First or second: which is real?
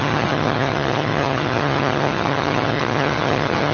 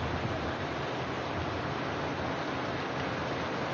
second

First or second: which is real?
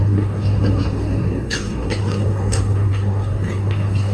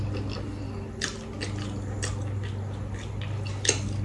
second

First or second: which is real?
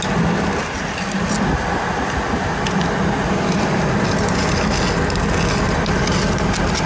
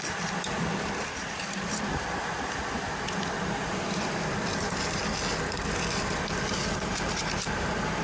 first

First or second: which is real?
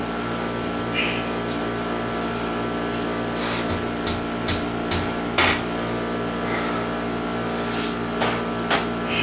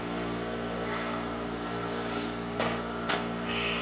first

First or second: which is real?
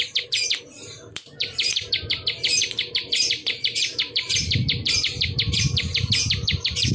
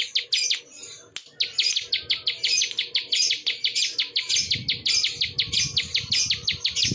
second